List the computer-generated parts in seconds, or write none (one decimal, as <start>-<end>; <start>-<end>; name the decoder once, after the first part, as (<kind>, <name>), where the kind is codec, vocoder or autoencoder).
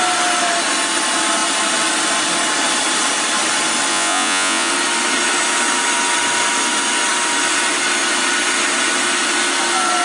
3.9-4.7 (vocoder, Vocos)